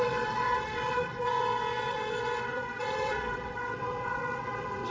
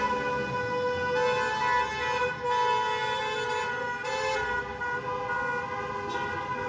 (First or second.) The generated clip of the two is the first